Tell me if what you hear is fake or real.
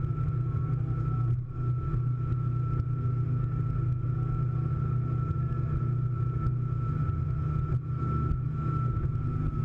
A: real